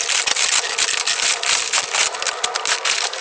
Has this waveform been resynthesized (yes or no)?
no